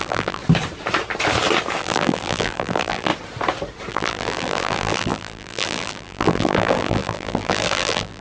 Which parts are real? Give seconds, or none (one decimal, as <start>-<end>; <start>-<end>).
0.4-1.8; 3.1-3.9